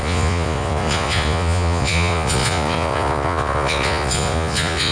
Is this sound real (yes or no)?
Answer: no